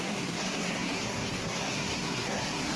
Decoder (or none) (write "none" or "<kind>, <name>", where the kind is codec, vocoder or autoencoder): codec, SNAC